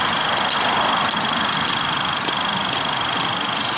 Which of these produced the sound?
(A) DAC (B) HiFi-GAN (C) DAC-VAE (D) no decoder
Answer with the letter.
D